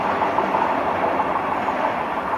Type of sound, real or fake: real